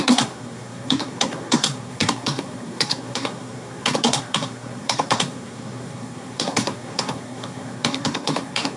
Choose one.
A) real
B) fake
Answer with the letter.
B